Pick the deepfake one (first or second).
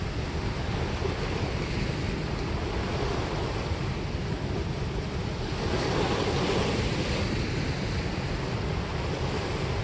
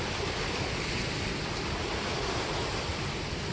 second